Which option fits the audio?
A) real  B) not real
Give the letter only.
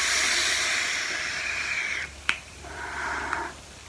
B